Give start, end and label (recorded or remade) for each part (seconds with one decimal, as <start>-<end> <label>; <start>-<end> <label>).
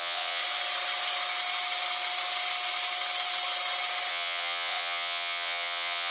0.0-0.4 remade; 0.4-4.1 recorded; 4.1-6.1 remade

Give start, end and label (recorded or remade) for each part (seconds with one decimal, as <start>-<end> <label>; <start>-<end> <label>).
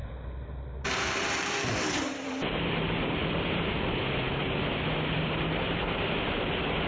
0.0-6.9 remade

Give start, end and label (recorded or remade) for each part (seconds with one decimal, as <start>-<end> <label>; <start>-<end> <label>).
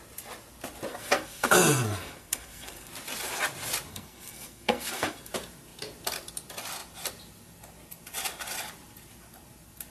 0.0-0.9 recorded; 0.9-2.9 remade; 2.9-3.9 recorded; 3.9-5.3 remade; 5.3-9.9 recorded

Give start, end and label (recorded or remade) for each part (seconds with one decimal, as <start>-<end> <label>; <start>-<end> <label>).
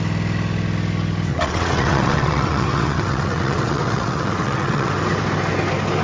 0.0-1.3 recorded; 1.3-4.9 remade; 4.9-6.0 recorded